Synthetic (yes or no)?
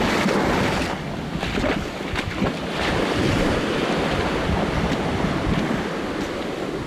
no